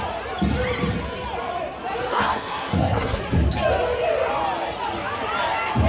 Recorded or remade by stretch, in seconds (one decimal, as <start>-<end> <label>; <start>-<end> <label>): 0.0-2.1 recorded; 2.1-3.2 remade; 3.2-5.9 recorded